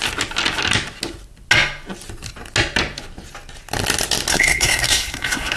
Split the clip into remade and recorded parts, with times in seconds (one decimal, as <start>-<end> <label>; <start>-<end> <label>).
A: 0.0-4.3 recorded; 4.3-5.6 remade